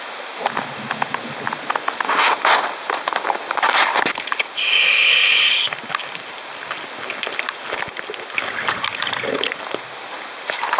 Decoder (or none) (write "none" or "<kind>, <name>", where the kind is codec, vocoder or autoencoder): none